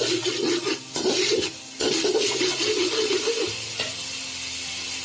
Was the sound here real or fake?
real